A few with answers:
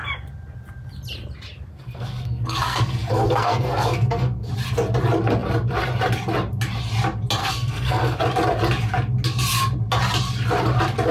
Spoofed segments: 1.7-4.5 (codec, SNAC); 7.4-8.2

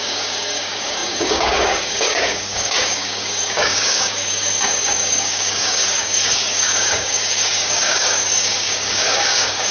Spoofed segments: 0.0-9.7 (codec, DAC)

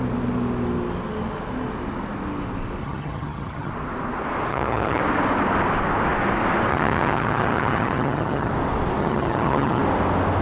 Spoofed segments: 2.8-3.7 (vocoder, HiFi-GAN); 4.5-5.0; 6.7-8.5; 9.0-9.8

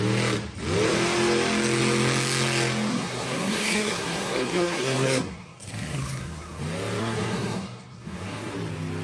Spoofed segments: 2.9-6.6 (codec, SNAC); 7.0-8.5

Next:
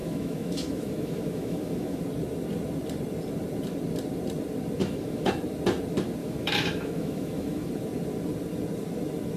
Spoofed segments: 0.0-2.0 (autoencoder, DAC-VAE); 4.8-5.3; 6.2-7.7

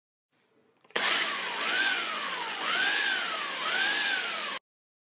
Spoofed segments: 0.6-3.0 (vocoder, Vocos)

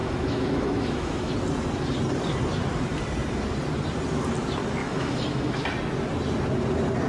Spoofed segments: 0.0-1.3 (autoencoder, DAC-VAE); 4.8-5.6

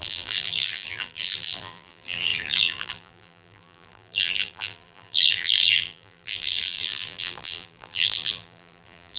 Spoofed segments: 0.0-9.2 (vocoder, BigVGAN v2)